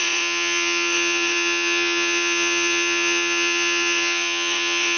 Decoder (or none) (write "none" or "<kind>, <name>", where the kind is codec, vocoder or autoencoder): vocoder, Vocos